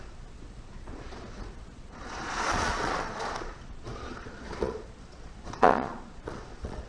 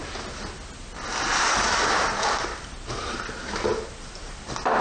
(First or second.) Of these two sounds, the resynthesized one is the first